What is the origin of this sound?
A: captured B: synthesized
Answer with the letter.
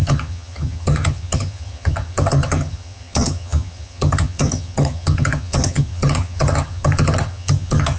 B